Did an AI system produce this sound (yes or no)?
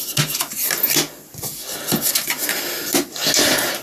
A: no